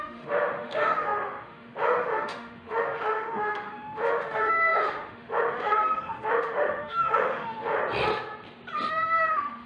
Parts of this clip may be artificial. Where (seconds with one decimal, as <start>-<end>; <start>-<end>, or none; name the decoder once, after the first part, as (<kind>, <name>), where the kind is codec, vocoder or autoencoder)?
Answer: 0.0-7.8 (autoencoder, DAC-VAE); 8.9-9.7